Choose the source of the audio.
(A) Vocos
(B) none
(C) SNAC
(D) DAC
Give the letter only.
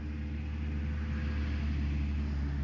B